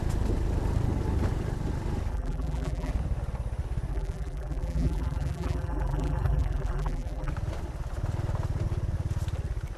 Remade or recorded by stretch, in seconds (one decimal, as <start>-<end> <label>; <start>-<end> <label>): 0.0-2.1 recorded; 2.1-2.9 remade; 2.9-3.9 recorded; 3.9-7.3 remade; 7.3-9.8 recorded